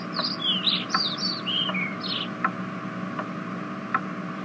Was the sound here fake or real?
real